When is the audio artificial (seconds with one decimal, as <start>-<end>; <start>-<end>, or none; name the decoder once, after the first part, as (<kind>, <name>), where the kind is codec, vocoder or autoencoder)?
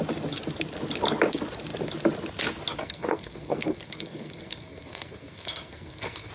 2.8-6.3 (codec, SNAC)